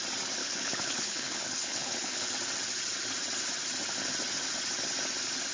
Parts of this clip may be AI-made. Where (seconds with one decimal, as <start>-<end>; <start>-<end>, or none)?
0.4-2.3